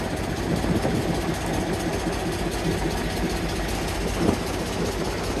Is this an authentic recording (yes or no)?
yes